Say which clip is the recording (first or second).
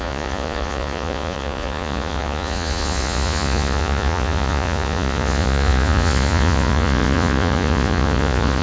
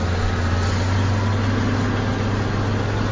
second